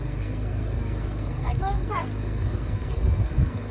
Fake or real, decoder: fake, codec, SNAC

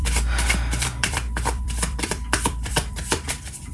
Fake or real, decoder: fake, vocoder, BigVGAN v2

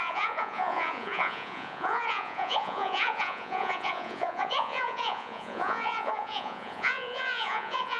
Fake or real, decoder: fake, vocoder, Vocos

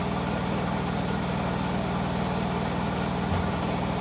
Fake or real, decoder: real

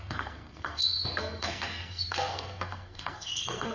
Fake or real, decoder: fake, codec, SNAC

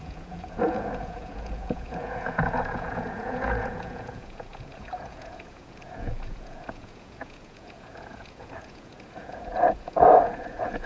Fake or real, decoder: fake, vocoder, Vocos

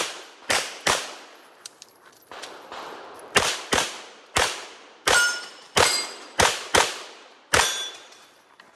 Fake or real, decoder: fake, vocoder, BigVGAN v2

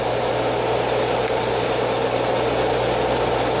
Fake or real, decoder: real